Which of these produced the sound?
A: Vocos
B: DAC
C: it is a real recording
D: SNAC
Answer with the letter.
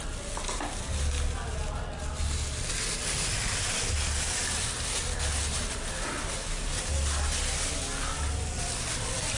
C